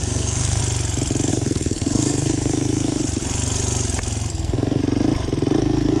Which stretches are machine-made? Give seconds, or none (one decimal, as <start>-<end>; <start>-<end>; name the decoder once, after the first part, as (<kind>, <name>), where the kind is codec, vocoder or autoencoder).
0.0-0.6 (codec, SNAC); 1.3-3.0; 4.3-4.8; 5.6-6.0